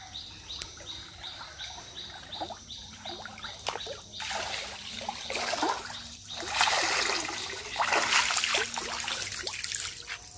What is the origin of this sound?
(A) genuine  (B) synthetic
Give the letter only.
A